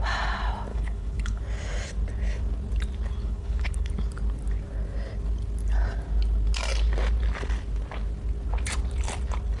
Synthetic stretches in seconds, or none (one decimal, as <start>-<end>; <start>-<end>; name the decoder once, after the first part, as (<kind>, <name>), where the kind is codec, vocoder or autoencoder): 0.7-1.4 (codec, HILCodec); 3.2-3.9